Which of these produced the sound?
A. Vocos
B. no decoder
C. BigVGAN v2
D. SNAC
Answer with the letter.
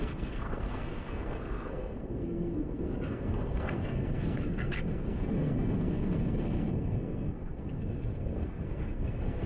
D